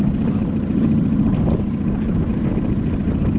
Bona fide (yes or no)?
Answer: yes